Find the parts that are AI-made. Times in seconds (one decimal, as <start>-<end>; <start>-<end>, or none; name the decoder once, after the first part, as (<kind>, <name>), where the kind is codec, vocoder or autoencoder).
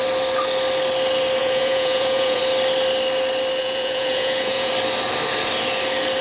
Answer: 1.4-2.4 (vocoder, Vocos); 3.6-4.7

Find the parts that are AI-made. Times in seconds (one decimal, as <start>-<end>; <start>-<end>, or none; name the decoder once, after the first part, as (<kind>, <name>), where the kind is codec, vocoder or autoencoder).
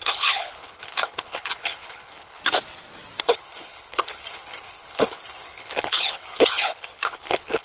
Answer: 0.0-2.4 (codec, HILCodec); 3.2-7.6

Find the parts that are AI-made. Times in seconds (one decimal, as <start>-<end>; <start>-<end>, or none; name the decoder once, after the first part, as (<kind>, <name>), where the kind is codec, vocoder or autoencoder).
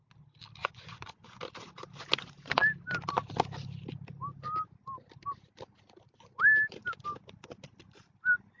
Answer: 0.6-1.4 (vocoder, Vocos)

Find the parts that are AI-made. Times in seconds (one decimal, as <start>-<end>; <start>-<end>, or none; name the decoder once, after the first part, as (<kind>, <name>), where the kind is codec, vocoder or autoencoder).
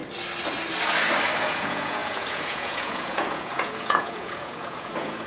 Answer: 1.4-5.3 (vocoder, Vocos)